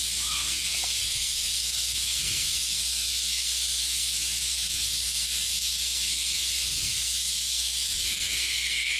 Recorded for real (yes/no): no